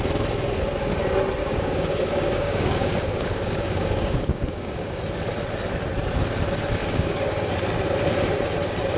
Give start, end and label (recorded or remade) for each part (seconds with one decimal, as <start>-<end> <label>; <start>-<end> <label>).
0.0-1.4 recorded; 1.4-4.9 remade; 4.9-6.8 recorded; 6.8-7.5 remade; 7.5-9.0 recorded